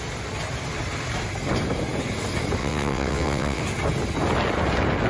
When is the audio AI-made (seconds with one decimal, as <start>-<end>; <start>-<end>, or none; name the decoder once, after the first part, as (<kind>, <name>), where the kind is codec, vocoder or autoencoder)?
2.6-3.6 (vocoder, WaveNeXt)